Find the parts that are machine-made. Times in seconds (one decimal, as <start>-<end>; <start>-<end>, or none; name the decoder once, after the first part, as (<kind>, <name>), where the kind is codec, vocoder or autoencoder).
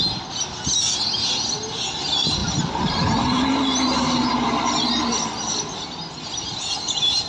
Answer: 2.4-4.3 (vocoder, BigVGAN v2)